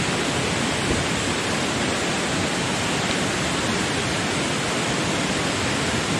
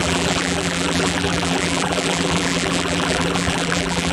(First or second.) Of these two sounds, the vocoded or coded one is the second